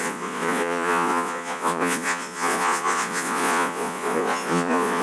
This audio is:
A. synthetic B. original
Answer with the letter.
A